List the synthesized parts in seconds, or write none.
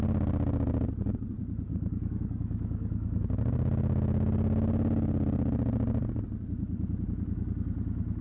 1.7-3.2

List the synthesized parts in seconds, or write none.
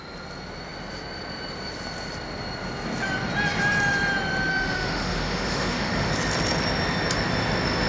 4.5-6.1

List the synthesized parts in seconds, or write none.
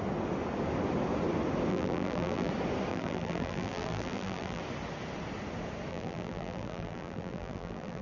1.7-2.5; 2.9-4.6; 5.9-8.0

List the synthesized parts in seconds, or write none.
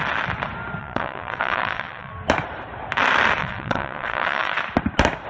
0.8-2.1; 3.4-4.6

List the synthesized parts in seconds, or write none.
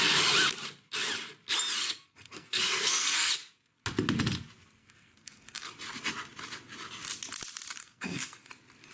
1.8-3.3; 4.8-5.7; 7.8-8.5